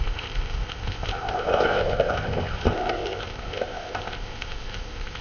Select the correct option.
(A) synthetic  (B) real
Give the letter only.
A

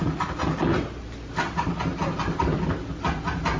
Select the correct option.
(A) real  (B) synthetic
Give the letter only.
A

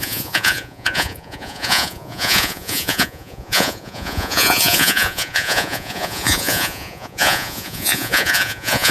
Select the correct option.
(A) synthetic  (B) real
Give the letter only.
A